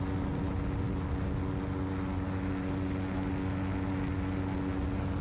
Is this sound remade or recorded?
recorded